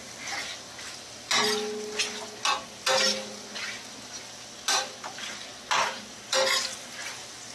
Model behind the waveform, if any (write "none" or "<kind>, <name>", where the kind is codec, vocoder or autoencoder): none